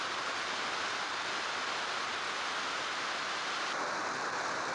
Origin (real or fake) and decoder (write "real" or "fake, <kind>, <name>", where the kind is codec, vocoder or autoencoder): real